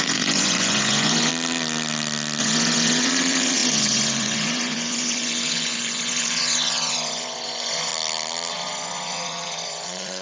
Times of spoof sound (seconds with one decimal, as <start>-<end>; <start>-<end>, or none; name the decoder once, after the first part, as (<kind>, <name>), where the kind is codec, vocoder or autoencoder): 0.0-1.3 (vocoder, Vocos); 2.4-7.9; 8.5-10.2